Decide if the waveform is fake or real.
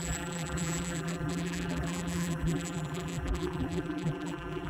fake